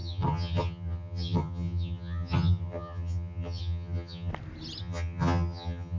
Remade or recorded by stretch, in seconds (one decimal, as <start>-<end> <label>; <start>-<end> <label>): 0.0-4.3 remade; 4.3-4.8 recorded; 4.8-6.0 remade